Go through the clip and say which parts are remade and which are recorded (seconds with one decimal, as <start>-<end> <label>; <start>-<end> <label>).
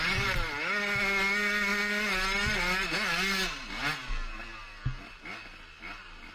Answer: 0.0-6.3 recorded